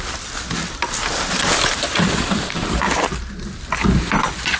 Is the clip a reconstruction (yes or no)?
no